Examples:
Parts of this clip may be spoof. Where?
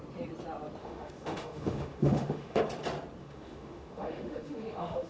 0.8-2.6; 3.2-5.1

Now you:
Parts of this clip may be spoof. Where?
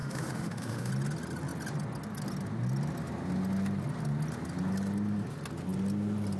0.0-0.9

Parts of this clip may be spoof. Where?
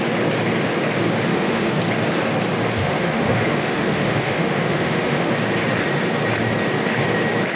1.3-1.8; 2.8-5.3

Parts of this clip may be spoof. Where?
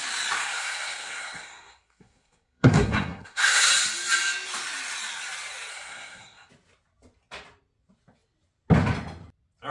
0.4-3.7; 5.7-6.5